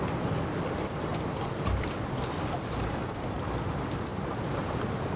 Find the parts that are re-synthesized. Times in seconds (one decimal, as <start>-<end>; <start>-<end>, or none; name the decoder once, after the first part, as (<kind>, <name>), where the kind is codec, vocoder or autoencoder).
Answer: none